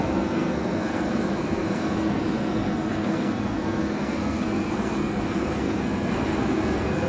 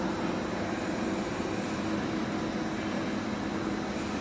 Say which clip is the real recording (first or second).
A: second